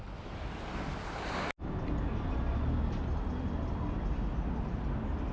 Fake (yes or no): no